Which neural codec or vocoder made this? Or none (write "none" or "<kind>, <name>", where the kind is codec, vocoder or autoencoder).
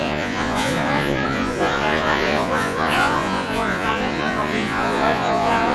vocoder, Vocos